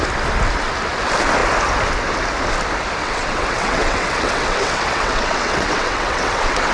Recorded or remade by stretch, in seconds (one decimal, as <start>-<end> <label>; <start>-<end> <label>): 0.0-3.0 recorded; 3.0-6.7 remade